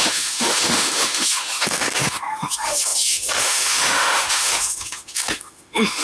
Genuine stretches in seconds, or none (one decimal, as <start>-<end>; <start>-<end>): none